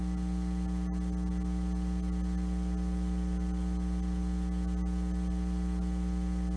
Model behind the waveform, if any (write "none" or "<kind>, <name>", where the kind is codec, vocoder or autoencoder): none